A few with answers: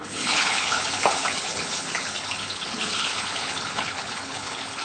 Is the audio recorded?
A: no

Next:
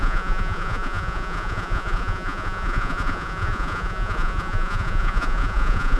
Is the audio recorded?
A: no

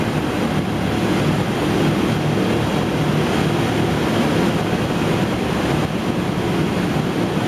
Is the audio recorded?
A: yes